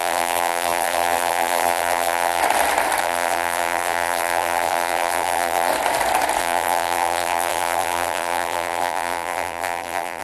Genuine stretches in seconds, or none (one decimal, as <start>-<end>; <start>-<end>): 2.4-3.0; 5.7-6.4